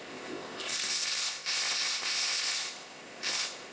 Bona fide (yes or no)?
no